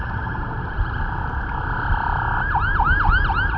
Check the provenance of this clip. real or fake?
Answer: real